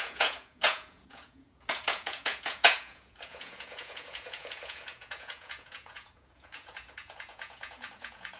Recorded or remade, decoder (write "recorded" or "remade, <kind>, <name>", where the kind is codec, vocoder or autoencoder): remade, vocoder, Vocos